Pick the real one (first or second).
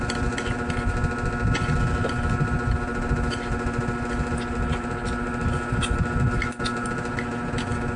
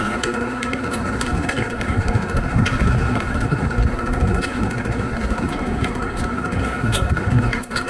first